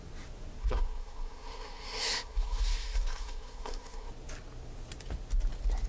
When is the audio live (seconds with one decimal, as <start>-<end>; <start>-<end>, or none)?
0.0-0.6; 4.1-5.9